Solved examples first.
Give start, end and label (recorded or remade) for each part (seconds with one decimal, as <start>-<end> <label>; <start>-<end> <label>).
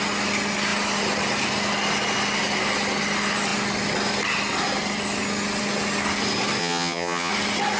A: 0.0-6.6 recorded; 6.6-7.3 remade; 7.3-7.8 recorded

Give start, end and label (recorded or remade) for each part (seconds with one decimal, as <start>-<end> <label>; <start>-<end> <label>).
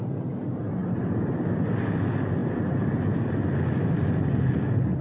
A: 0.0-5.0 recorded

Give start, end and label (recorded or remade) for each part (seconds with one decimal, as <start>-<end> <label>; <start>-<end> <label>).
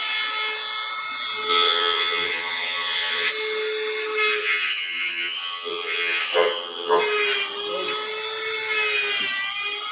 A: 0.0-1.5 recorded; 1.5-3.3 remade; 3.3-4.4 recorded; 4.4-7.0 remade; 7.0-9.9 recorded